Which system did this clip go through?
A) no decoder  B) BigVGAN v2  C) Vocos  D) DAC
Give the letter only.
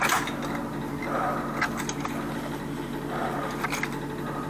A